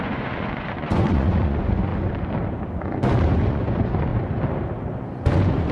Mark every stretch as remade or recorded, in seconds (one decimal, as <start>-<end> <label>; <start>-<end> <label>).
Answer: 0.0-1.9 remade; 1.9-3.5 recorded; 3.5-4.1 remade; 4.1-5.0 recorded; 5.0-5.7 remade